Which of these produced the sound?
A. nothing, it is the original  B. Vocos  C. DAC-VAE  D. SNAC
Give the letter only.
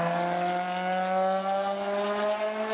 A